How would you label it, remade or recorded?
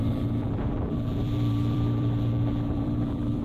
remade